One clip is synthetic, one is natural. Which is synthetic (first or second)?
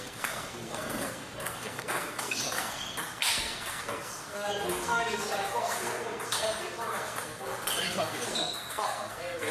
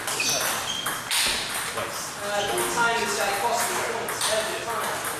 first